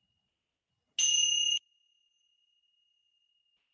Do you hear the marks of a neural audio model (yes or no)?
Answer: no